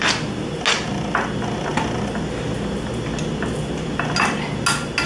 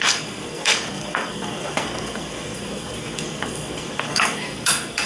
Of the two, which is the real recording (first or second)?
first